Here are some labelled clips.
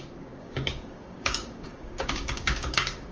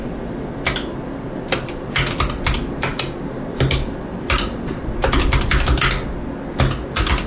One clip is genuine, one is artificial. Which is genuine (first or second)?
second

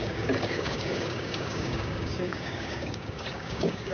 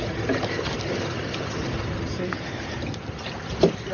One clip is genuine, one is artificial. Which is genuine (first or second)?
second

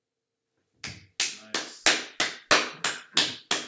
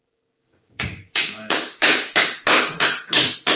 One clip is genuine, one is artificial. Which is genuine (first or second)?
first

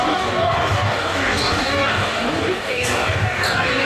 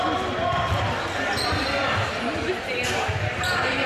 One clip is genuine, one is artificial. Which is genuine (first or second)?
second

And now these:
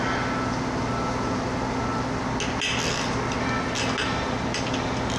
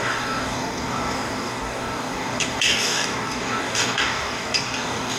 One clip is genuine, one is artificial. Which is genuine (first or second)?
first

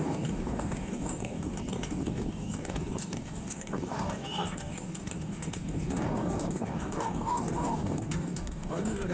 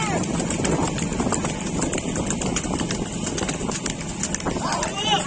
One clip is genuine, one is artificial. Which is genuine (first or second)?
second